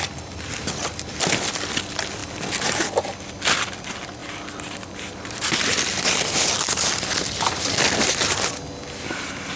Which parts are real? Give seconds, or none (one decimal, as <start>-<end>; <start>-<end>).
0.0-4.2; 8.9-9.6